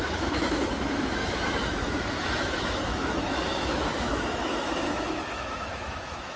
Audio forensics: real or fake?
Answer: fake